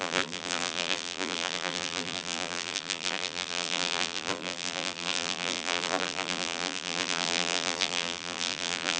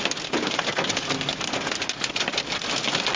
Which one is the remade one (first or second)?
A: first